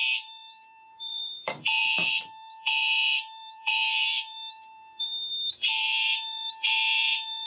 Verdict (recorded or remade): remade